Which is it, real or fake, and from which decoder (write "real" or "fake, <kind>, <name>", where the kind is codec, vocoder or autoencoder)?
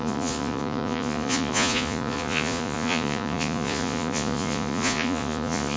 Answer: fake, vocoder, Vocos